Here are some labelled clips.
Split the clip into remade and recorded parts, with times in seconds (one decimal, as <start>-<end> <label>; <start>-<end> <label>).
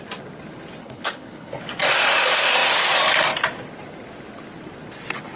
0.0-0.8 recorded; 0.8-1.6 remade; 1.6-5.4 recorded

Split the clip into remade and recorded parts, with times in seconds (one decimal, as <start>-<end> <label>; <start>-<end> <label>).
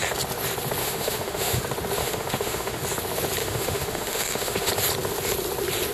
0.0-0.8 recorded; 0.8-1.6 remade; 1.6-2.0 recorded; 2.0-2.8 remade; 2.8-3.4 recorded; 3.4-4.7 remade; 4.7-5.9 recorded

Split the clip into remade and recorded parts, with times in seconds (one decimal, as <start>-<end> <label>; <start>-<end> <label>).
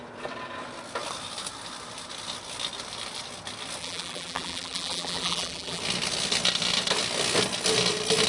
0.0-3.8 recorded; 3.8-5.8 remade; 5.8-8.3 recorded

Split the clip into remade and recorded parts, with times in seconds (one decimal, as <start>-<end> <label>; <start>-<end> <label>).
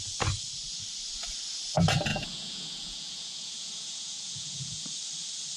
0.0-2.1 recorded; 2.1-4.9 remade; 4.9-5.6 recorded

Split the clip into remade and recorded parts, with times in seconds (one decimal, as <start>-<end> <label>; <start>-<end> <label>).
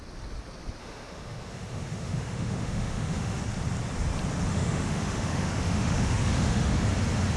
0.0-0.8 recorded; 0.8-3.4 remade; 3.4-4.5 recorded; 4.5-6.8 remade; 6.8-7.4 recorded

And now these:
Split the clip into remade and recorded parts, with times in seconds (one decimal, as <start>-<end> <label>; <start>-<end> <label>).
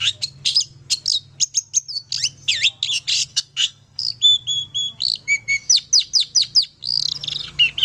0.0-3.3 recorded; 3.3-4.0 remade; 4.0-7.8 recorded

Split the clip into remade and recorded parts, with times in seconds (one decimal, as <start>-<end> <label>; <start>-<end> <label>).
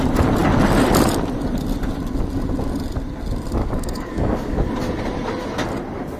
0.0-3.6 recorded; 3.6-4.7 remade; 4.7-6.2 recorded